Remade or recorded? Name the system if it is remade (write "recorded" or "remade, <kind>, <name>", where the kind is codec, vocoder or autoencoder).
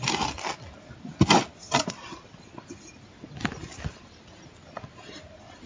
recorded